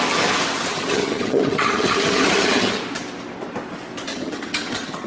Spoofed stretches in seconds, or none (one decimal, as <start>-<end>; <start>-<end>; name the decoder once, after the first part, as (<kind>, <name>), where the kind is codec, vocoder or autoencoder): 0.7-2.8 (vocoder, HiFi-GAN); 4.1-5.1